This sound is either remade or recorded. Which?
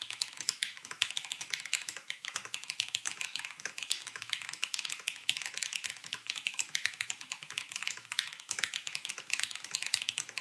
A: remade